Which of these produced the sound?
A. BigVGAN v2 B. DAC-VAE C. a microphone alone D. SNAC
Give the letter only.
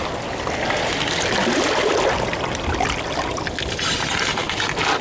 C